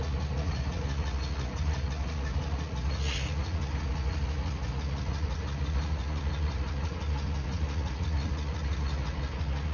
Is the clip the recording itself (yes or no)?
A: no